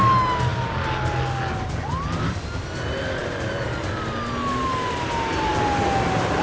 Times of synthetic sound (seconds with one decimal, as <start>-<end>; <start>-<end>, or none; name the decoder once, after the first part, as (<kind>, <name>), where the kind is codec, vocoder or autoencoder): none